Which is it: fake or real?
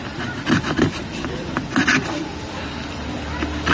real